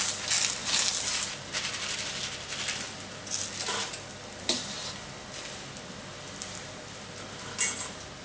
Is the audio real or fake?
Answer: real